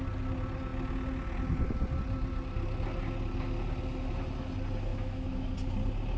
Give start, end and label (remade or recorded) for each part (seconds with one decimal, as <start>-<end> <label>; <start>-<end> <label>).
0.0-4.9 recorded; 4.9-5.5 remade; 5.5-6.2 recorded